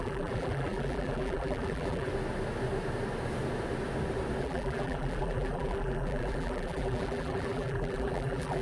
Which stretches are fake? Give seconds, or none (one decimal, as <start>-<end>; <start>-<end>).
0.0-2.1; 4.4-8.6